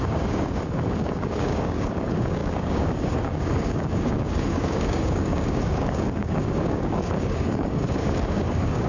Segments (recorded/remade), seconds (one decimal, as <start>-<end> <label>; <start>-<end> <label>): 0.0-8.9 remade